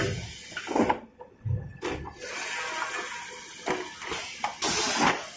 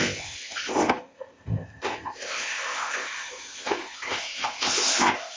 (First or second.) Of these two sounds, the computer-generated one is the second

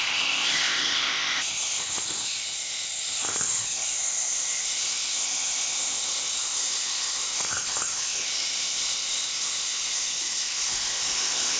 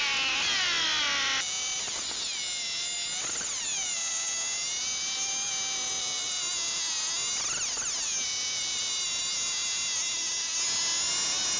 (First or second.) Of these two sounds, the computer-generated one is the first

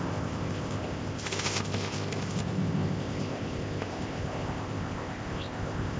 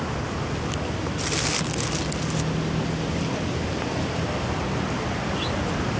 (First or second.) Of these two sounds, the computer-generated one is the first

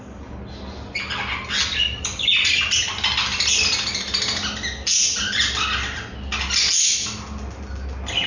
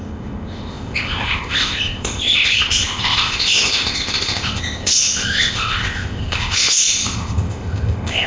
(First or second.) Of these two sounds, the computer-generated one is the second